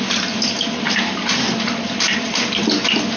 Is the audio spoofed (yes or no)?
no